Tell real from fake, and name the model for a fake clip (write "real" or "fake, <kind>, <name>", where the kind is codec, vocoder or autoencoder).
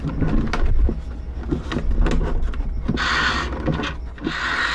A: real